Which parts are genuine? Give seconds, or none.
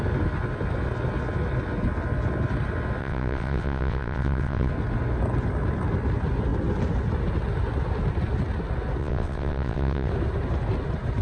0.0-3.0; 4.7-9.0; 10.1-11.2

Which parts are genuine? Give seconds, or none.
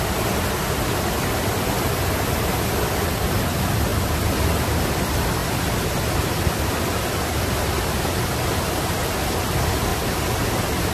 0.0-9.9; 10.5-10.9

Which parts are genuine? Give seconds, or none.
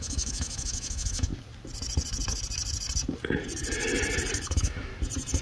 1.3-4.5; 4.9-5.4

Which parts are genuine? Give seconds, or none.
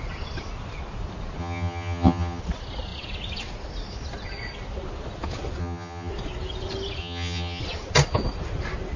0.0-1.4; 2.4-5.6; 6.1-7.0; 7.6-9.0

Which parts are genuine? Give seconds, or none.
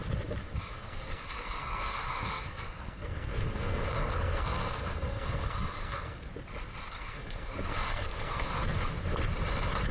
0.0-0.6; 6.3-6.9; 8.5-9.9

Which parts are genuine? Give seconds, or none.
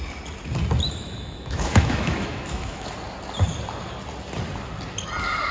0.0-1.0; 2.9-5.5